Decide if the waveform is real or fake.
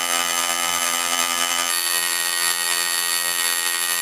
fake